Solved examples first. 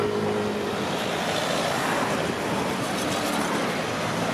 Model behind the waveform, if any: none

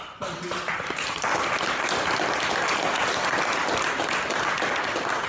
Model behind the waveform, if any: none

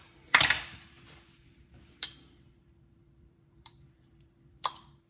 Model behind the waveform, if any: vocoder, BigVGAN v2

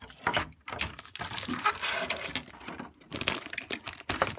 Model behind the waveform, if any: none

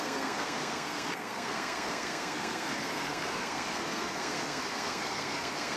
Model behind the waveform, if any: codec, SNAC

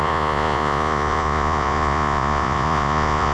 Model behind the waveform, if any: vocoder, Vocos